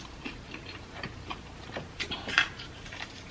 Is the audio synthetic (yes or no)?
yes